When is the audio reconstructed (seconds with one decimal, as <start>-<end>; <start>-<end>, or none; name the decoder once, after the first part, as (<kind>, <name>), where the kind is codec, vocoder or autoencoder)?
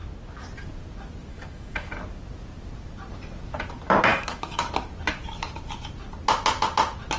1.3-1.9 (autoencoder, DAC-VAE); 4.1-4.6